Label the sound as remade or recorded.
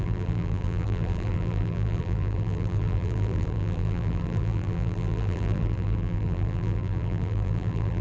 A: remade